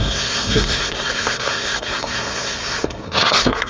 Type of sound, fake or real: fake